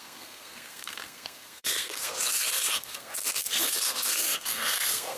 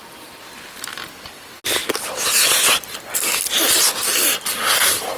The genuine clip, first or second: second